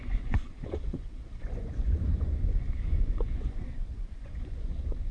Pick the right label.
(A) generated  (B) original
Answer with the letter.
A